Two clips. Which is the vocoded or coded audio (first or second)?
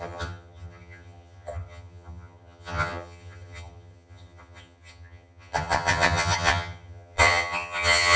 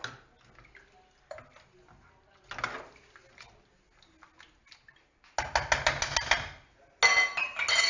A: first